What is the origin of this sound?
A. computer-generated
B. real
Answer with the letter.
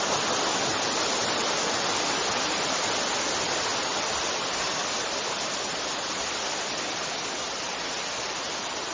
B